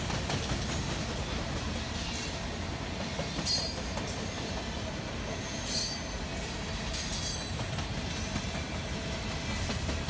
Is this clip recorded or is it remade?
recorded